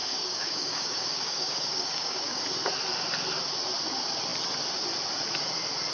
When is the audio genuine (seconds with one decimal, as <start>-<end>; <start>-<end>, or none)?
2.4-5.9